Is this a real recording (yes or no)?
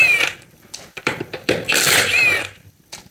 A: no